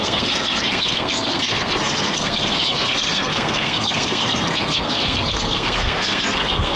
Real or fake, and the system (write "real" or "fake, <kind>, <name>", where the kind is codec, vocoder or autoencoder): fake, codec, SNAC